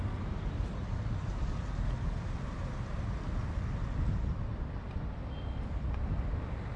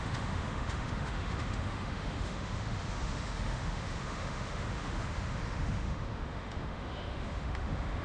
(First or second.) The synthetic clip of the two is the second